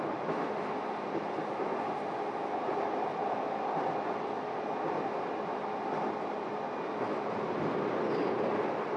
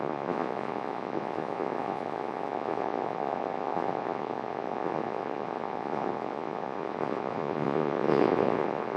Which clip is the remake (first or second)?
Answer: second